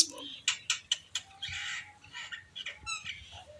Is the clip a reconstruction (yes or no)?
no